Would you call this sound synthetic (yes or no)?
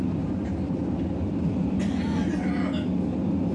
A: no